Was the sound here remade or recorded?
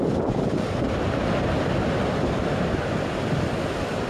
recorded